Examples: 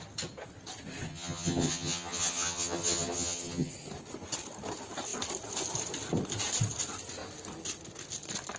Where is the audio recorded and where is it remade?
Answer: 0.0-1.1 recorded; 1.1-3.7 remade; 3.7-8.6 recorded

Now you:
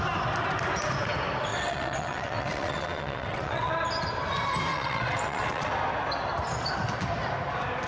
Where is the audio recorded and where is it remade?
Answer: 0.0-1.5 recorded; 1.5-3.7 remade; 3.7-4.7 recorded; 4.7-5.7 remade; 5.7-7.9 recorded

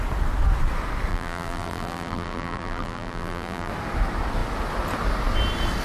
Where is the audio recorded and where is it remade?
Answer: 0.0-1.1 recorded; 1.1-3.7 remade; 3.7-5.8 recorded

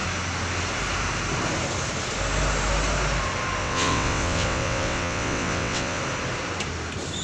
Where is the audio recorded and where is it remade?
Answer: 0.0-3.6 recorded; 3.6-6.0 remade; 6.0-7.2 recorded

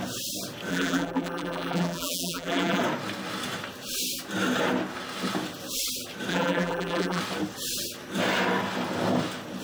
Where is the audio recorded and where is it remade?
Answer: 0.0-0.7 recorded; 0.7-2.8 remade; 2.8-6.3 recorded; 6.3-7.2 remade; 7.2-9.6 recorded

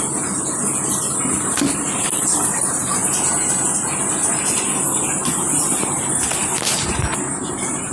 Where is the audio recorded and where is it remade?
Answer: 0.0-7.9 recorded

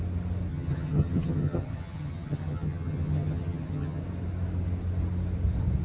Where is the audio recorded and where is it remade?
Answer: 0.0-0.5 recorded; 0.5-4.0 remade; 4.0-5.8 recorded

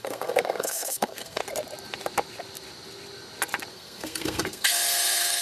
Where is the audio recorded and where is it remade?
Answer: 0.0-1.4 remade; 1.4-3.7 recorded; 3.7-5.4 remade